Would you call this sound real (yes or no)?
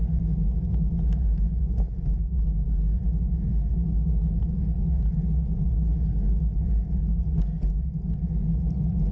yes